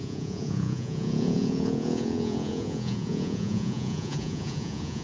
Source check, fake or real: fake